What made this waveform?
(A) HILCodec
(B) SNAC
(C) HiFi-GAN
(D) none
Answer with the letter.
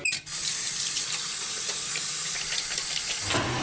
D